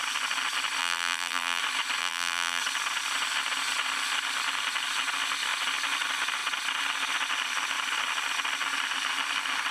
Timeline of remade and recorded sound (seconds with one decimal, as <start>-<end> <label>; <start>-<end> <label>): 0.0-0.8 recorded; 0.8-1.6 remade; 1.6-2.0 recorded; 2.0-2.6 remade; 2.6-9.7 recorded